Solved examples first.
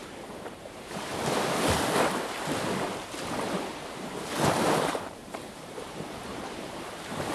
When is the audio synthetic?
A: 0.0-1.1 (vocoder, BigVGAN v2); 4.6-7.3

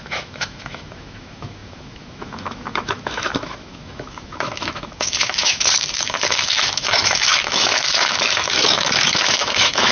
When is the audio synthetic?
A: 0.0-9.9 (autoencoder, DAC-VAE)

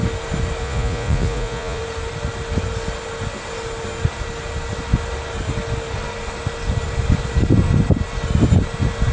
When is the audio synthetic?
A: 0.6-1.8 (vocoder, Vocos)

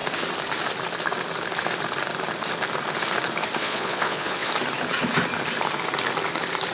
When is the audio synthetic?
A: 3.6-4.5 (vocoder, Vocos)

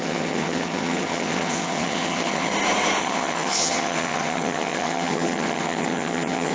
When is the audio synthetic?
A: 0.0-2.5 (vocoder, HiFi-GAN); 3.0-6.5

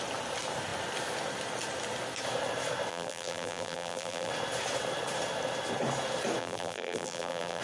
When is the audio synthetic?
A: 2.9-4.3 (vocoder, BigVGAN v2); 6.4-7.6

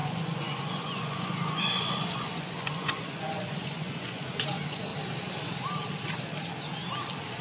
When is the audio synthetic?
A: 0.0-4.9 (vocoder, Vocos)

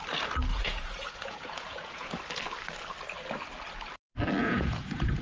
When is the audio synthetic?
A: 0.5-2.1 (vocoder, Vocos); 4.4-5.2